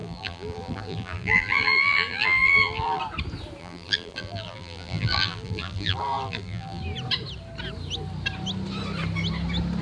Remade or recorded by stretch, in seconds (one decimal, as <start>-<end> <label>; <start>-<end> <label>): 0.0-3.0 remade; 3.0-3.6 recorded; 3.6-6.8 remade; 6.8-9.8 recorded